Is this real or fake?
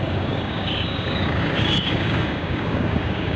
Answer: fake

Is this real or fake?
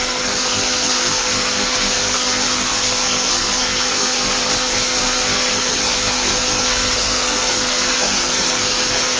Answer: fake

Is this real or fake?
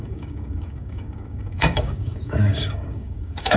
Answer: fake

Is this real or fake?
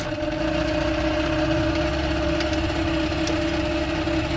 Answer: real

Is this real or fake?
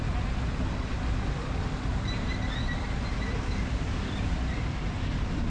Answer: real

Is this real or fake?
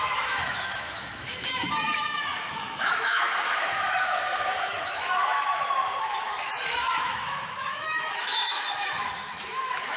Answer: fake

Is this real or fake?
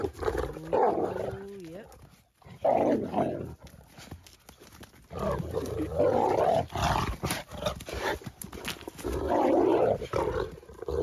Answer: real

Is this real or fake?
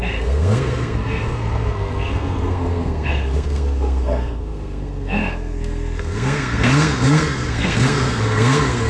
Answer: fake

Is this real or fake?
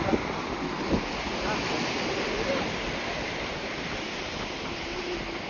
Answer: real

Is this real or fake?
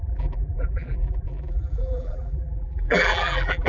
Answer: fake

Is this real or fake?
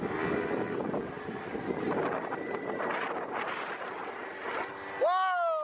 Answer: real